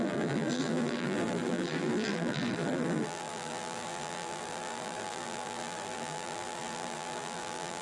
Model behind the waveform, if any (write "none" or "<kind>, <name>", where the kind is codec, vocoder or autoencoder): vocoder, BigVGAN v2